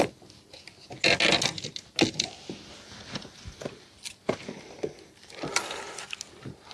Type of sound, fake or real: real